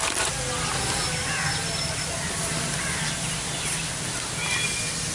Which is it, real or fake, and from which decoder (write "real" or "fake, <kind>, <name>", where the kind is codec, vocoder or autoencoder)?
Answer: real